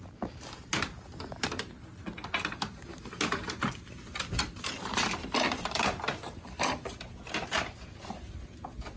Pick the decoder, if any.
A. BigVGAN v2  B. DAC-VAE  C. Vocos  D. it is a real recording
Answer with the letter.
D